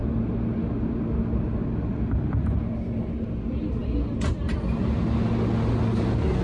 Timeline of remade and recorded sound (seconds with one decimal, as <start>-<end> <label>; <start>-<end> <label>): 0.0-6.4 recorded